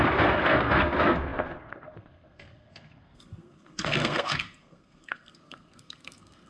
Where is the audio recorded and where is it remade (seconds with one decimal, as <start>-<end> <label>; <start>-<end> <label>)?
0.0-6.5 remade